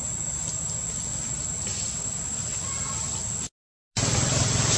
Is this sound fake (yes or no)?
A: no